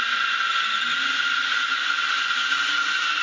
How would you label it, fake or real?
real